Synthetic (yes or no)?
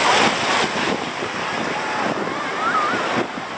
no